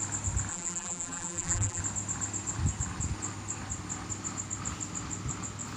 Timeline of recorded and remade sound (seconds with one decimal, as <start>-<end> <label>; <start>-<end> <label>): 0.0-0.5 recorded; 0.5-1.8 remade; 1.8-5.8 recorded